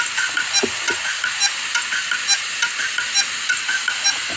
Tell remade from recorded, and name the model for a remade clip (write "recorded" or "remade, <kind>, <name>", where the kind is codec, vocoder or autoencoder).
recorded